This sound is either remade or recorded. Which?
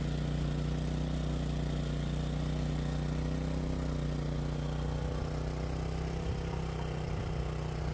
recorded